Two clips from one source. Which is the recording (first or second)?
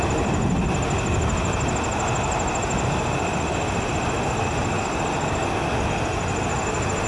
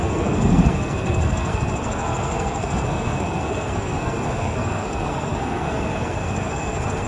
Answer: first